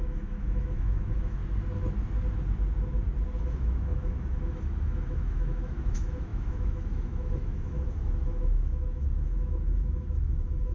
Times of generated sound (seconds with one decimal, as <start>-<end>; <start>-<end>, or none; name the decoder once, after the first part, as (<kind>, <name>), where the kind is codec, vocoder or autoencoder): 0.0-1.4 (autoencoder, DAC-VAE); 3.4-10.7